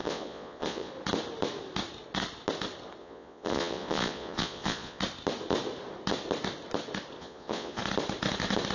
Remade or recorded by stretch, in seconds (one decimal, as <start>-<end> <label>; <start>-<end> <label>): 0.0-0.9 remade; 0.9-3.0 recorded; 3.0-5.0 remade; 5.0-7.2 recorded; 7.2-7.8 remade; 7.8-8.7 recorded